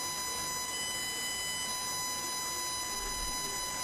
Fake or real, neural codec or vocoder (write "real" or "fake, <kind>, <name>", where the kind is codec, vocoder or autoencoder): real